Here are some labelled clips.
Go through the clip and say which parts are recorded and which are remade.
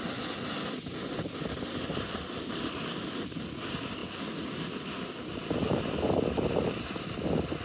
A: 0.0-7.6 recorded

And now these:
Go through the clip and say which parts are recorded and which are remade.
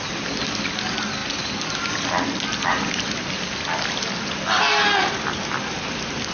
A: 0.0-6.3 recorded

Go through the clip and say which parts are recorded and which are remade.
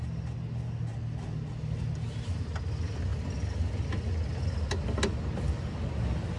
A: 0.0-6.4 recorded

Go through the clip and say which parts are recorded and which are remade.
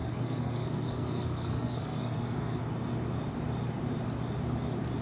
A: 0.0-2.6 remade; 2.6-5.0 recorded